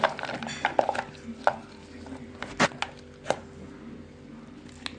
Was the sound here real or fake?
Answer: real